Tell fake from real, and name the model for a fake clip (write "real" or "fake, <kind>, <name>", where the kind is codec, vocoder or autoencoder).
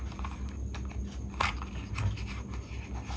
real